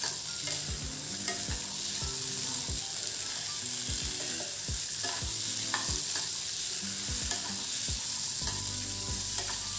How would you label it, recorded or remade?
recorded